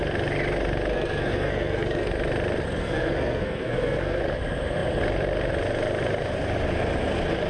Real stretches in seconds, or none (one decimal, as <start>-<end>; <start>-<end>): 0.0-0.9; 2.1-2.8; 4.2-7.5